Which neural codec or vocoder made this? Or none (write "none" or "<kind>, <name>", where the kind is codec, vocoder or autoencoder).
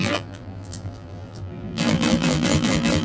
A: vocoder, BigVGAN v2